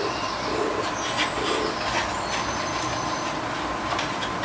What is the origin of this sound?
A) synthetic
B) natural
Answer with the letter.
B